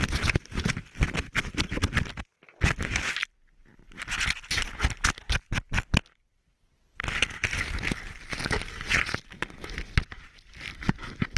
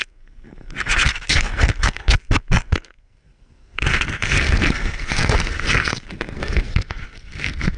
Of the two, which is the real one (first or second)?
first